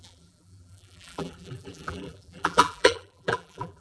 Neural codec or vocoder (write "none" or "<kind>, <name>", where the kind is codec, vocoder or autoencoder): vocoder, BigVGAN v2